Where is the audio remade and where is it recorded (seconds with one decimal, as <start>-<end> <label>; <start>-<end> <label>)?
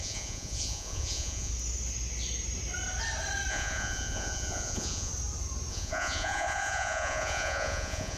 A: 0.0-1.5 remade; 1.5-3.5 recorded; 3.5-5.1 remade; 5.1-5.7 recorded; 5.7-8.2 remade